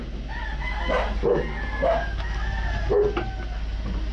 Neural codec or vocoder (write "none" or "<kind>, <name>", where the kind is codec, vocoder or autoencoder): none